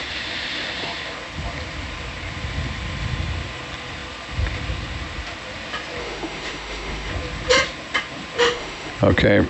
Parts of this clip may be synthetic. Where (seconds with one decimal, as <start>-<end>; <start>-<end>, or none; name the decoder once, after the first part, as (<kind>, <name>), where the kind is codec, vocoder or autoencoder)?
6.0-7.1 (autoencoder, DAC-VAE); 8.4-8.9